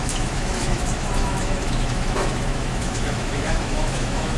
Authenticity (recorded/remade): remade